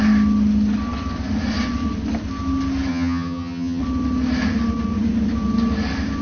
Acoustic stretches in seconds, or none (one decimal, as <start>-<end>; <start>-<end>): 0.0-2.9; 3.8-6.2